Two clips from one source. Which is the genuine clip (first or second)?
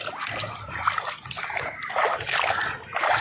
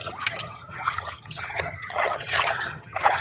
first